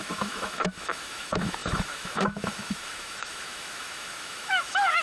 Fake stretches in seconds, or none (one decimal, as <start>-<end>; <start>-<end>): 0.0-5.0